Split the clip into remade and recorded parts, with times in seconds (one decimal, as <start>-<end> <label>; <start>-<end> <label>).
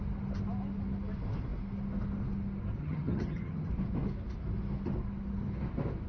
0.0-2.8 recorded; 2.8-3.7 remade; 3.7-6.1 recorded